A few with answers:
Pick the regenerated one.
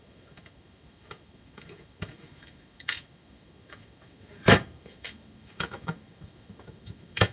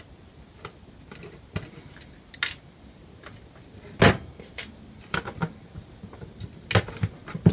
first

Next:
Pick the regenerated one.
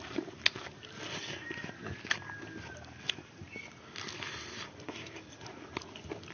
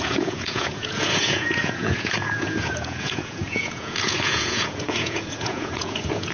second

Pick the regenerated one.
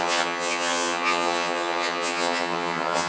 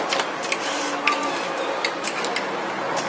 first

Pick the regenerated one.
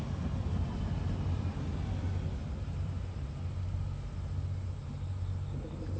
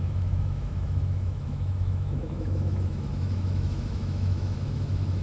second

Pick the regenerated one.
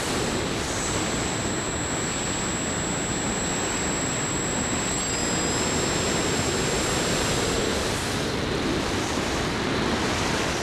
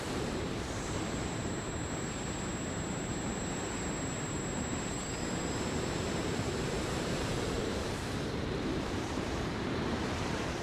second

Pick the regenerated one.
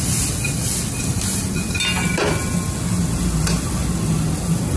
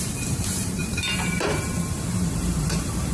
second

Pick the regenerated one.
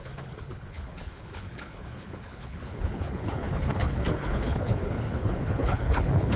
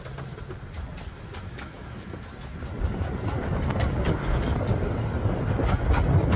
first